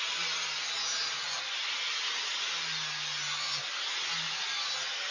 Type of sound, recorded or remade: recorded